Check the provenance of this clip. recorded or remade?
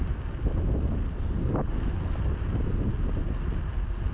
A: recorded